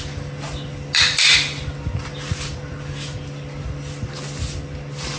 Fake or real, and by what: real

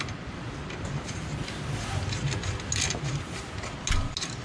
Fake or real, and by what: real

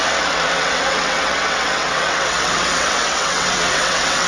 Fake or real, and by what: fake, vocoder, WaveNeXt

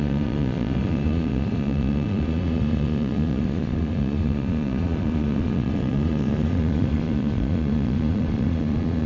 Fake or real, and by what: fake, vocoder, Vocos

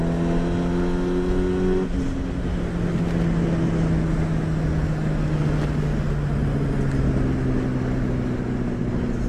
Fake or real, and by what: real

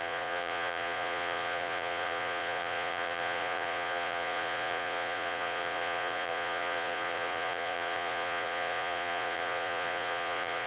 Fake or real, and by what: fake, vocoder, Vocos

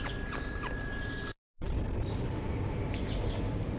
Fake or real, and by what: real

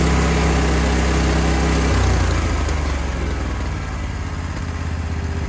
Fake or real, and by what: real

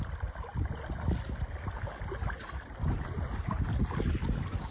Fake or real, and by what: real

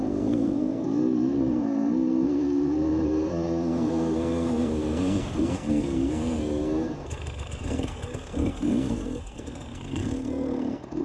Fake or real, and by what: fake, codec, SNAC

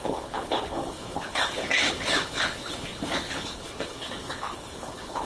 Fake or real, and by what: fake, codec, HILCodec